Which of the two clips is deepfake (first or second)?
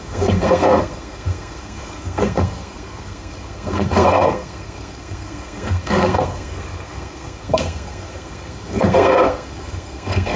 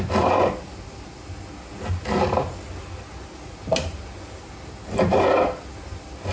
first